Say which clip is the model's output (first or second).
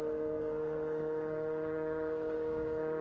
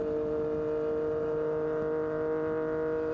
first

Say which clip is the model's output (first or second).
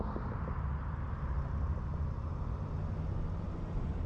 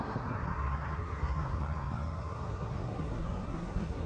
second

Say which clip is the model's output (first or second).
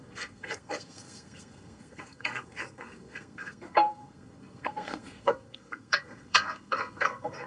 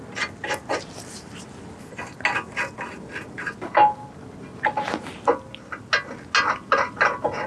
first